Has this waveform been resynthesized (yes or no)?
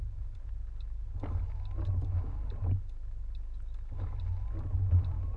no